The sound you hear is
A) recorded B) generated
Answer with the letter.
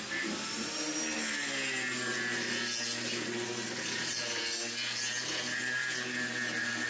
A